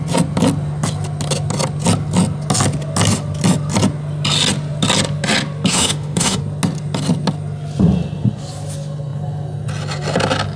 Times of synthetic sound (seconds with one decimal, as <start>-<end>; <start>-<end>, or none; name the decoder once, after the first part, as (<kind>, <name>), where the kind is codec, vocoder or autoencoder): 5.7-6.4 (autoencoder, DAC-VAE)